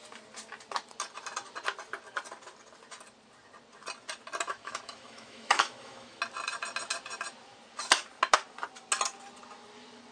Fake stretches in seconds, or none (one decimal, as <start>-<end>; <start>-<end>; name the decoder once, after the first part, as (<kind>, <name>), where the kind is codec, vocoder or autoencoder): 4.5-6.2 (autoencoder, DAC-VAE)